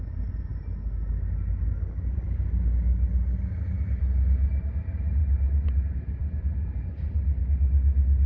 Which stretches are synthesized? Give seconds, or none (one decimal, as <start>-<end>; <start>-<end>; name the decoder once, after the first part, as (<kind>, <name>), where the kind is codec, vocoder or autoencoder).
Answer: 5.2-5.8 (vocoder, BigVGAN v2)